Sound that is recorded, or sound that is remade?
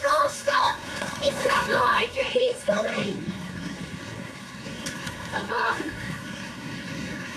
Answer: remade